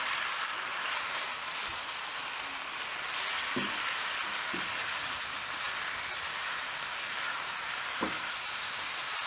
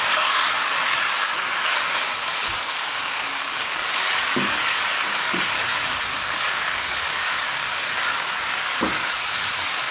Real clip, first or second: first